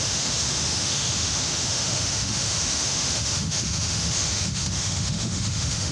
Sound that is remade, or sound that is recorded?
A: remade